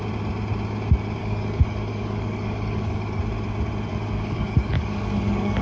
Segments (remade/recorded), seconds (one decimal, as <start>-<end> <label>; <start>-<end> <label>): 0.0-1.2 recorded; 1.2-3.2 remade; 3.2-3.9 recorded; 3.9-5.6 remade